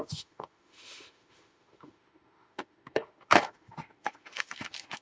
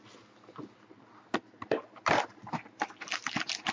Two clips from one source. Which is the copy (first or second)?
first